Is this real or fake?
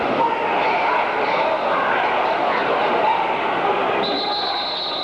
real